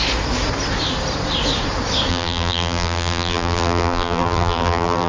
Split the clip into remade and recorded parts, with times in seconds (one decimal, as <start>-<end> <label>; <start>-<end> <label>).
0.0-2.1 recorded; 2.1-5.1 remade